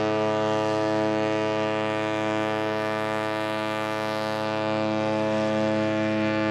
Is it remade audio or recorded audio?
remade